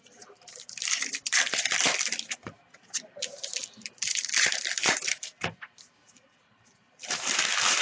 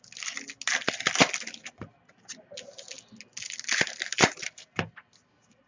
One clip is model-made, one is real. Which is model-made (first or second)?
first